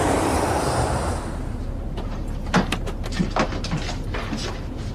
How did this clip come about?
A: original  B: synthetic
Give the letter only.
A